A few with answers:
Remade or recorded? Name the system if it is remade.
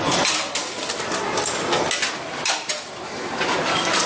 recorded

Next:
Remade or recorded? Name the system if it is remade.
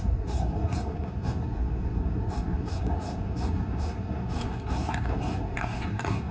remade, codec, SNAC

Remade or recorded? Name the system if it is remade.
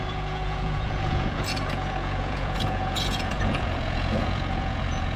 remade, vocoder, Vocos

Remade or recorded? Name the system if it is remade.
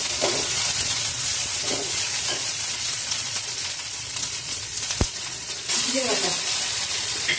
remade, vocoder, Vocos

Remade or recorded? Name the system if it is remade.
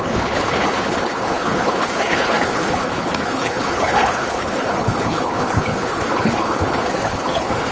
remade, codec, HILCodec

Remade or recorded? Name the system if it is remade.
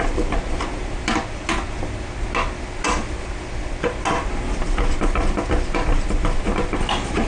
recorded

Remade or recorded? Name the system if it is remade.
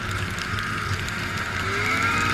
recorded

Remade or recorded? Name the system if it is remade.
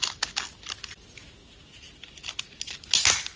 recorded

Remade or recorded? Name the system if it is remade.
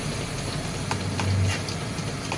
recorded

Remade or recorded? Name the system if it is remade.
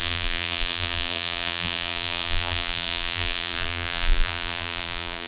remade, vocoder, BigVGAN v2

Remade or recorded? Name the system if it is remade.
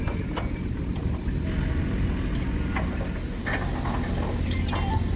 recorded